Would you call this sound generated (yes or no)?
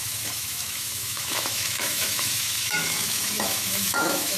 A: yes